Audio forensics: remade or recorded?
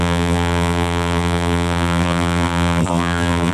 remade